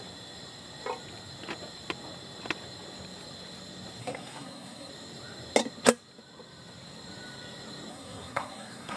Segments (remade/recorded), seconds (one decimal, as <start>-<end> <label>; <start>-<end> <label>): 0.0-4.0 recorded; 4.0-4.9 remade; 4.9-7.9 recorded; 7.9-9.0 remade